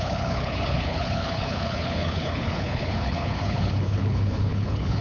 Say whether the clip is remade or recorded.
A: remade